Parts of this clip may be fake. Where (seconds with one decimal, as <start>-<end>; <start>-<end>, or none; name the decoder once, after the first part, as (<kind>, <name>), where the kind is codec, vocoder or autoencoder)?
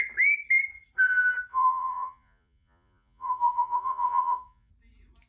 1.5-4.7 (vocoder, Vocos)